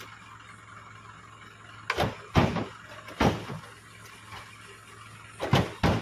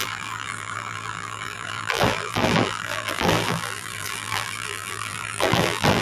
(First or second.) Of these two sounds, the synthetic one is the second